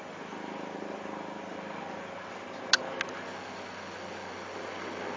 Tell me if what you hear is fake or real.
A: real